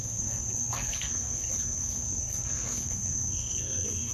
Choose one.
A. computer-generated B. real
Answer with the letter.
A